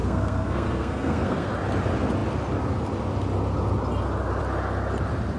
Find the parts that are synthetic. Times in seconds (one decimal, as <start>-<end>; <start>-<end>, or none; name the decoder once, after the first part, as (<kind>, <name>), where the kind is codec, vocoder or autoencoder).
0.0-1.5 (codec, SNAC)